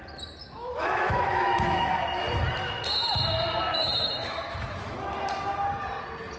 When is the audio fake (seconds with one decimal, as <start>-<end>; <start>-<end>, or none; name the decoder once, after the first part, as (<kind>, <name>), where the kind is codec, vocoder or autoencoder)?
0.4-2.2 (autoencoder, DAC-VAE); 3.7-5.1